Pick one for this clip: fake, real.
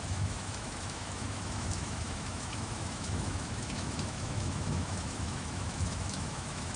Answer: fake